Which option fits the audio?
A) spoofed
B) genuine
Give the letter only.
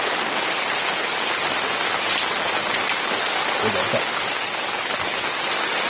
B